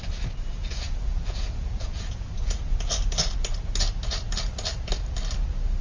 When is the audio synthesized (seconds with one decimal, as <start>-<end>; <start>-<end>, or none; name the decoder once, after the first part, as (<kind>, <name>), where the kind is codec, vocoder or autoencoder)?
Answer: 0.5-2.6 (vocoder, Vocos)